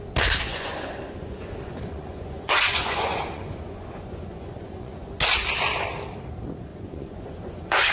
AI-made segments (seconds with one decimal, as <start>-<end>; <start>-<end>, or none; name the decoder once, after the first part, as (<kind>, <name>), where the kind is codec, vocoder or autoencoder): 0.5-5.2 (vocoder, Vocos); 6.7-7.9